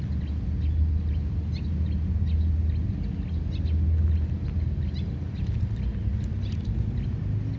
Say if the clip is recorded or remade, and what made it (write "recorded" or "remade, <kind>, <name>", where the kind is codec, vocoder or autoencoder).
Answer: recorded